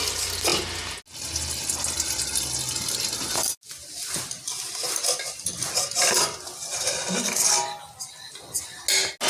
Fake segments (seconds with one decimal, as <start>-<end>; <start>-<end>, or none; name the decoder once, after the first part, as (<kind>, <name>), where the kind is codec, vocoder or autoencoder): none